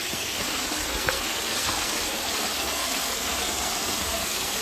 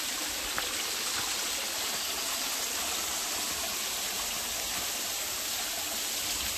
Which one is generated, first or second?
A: first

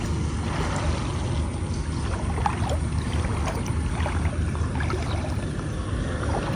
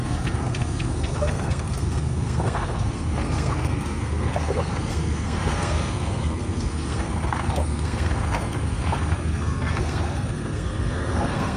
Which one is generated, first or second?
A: second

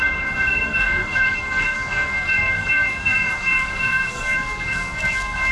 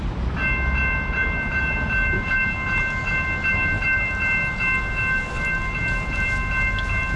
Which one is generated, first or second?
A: first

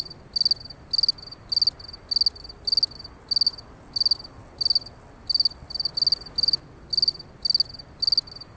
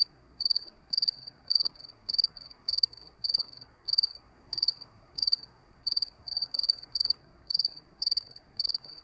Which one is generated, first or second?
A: second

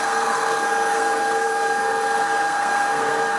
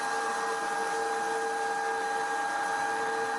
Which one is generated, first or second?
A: first